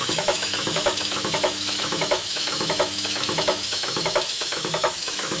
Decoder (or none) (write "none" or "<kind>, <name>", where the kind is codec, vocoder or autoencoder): autoencoder, DAC-VAE